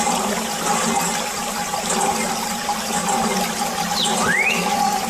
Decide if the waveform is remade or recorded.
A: recorded